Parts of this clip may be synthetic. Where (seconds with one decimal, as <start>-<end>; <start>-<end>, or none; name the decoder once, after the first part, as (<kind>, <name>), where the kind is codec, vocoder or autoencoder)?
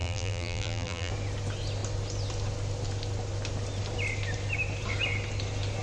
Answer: 0.0-1.1 (vocoder, BigVGAN v2)